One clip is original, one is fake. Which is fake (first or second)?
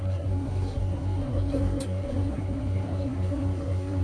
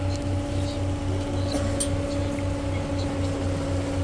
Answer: first